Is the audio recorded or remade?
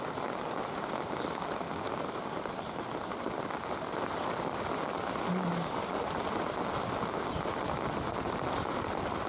recorded